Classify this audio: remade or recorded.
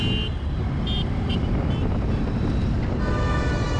recorded